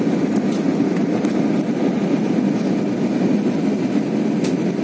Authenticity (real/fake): real